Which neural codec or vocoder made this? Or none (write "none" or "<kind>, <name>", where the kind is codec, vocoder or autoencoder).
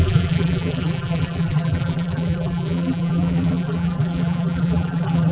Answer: vocoder, BigVGAN v2